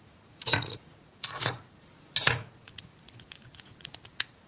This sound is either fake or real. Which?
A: fake